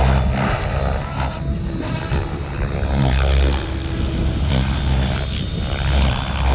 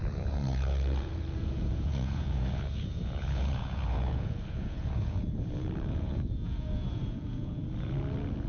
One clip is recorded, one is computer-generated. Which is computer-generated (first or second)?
second